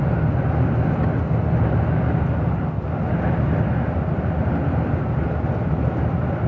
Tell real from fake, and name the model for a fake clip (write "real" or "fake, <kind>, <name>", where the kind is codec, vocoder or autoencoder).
real